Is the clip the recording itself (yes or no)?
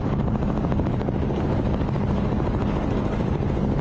no